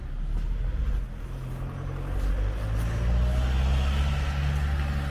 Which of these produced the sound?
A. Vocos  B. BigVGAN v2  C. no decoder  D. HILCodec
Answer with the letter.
C